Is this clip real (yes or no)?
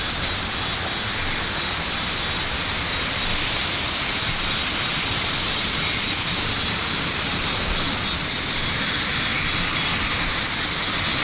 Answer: yes